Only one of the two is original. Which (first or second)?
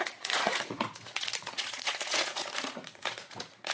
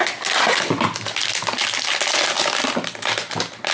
second